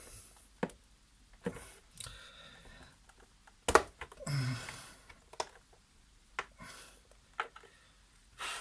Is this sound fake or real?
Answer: real